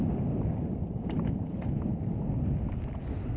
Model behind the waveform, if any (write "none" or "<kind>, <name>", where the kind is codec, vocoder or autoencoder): none